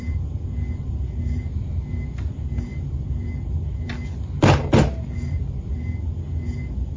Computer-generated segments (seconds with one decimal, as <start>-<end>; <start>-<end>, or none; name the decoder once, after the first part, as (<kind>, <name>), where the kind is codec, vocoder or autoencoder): none